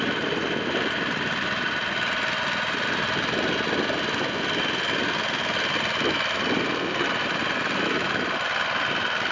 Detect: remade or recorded recorded